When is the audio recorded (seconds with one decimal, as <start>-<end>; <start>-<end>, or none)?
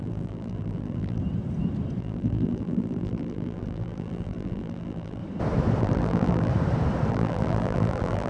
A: 1.2-2.0; 5.2-5.8; 6.5-7.1